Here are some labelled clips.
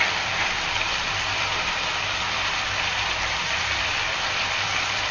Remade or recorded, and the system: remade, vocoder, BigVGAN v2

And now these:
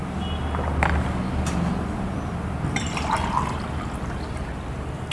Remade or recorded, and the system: recorded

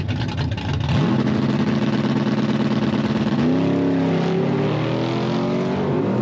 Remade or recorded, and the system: recorded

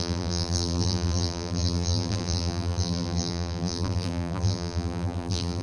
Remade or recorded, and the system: remade, vocoder, BigVGAN v2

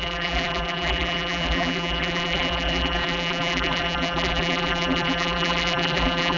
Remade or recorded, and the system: remade, vocoder, BigVGAN v2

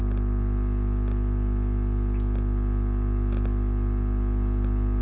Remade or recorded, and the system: recorded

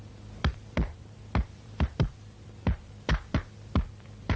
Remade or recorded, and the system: remade, vocoder, BigVGAN v2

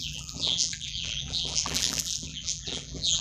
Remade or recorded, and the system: remade, vocoder, BigVGAN v2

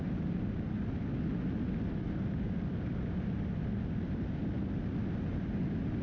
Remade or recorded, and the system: recorded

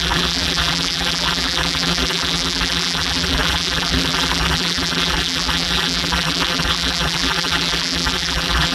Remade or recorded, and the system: remade, vocoder, BigVGAN v2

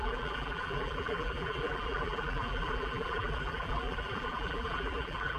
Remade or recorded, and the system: remade, vocoder, BigVGAN v2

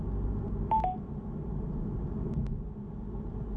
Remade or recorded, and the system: recorded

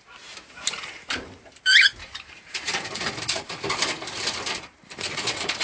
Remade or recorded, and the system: remade, vocoder, BigVGAN v2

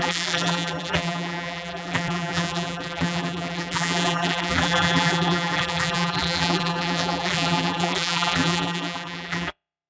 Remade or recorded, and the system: remade, vocoder, BigVGAN v2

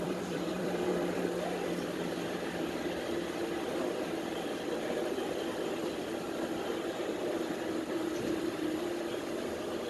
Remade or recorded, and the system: remade, vocoder, BigVGAN v2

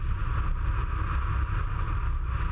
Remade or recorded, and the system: recorded